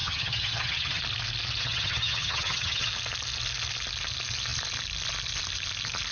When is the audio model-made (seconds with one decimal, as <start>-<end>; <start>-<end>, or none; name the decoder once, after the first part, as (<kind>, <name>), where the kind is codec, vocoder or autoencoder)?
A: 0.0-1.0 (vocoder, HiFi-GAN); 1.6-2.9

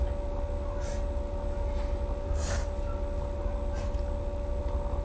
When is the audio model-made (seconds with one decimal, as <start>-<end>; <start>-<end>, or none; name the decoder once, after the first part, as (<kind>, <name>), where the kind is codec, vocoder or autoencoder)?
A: none

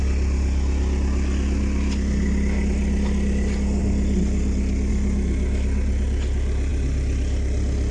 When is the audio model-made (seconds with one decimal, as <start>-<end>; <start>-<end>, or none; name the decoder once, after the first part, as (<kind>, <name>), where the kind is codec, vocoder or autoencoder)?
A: none

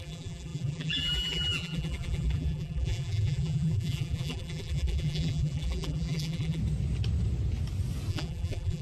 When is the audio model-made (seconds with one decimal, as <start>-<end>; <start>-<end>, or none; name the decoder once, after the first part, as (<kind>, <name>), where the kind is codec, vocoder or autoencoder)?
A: 0.0-6.6 (vocoder, BigVGAN v2); 8.1-8.8

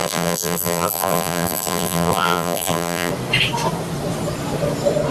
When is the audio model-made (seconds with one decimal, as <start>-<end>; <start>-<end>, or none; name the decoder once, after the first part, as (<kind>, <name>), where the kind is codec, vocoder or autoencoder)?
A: 0.0-3.1 (vocoder, BigVGAN v2)

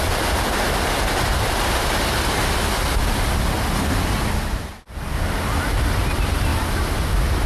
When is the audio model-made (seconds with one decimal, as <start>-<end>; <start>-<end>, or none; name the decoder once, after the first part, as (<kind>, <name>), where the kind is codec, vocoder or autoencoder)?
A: none